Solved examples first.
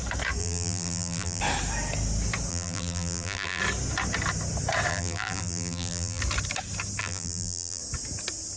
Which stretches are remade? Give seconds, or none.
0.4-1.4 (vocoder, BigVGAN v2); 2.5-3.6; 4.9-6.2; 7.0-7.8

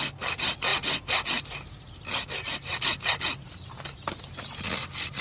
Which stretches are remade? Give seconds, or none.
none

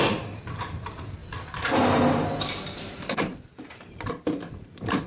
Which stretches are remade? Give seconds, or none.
0.0-1.2 (vocoder, BigVGAN v2); 2.1-5.1